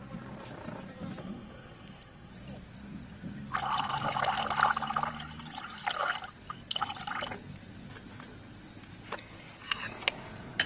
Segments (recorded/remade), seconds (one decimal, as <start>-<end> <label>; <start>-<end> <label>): 0.0-1.2 recorded; 1.2-2.3 remade; 2.3-10.7 recorded